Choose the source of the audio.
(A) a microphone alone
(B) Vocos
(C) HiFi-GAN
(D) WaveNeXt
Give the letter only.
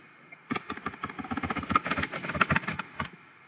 A